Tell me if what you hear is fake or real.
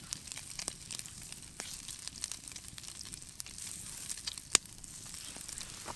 real